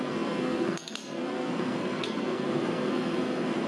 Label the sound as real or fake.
fake